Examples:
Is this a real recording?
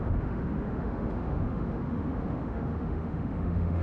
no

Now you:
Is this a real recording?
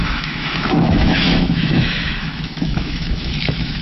no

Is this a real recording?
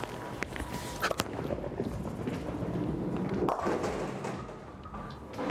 yes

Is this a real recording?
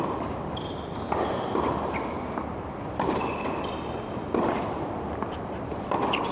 yes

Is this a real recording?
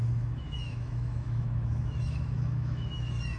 no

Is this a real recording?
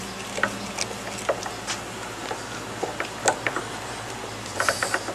yes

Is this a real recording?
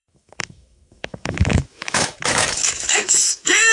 no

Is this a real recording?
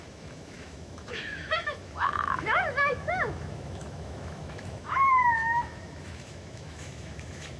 no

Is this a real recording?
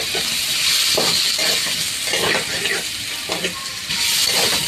yes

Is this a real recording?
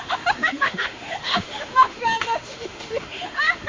no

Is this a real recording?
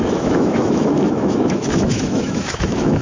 no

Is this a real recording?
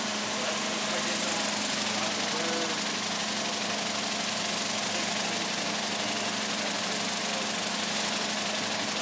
yes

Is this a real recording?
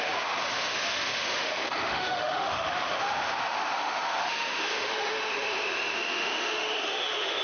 no